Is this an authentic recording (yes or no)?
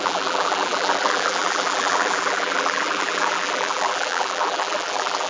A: no